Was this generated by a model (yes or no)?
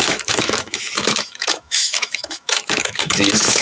yes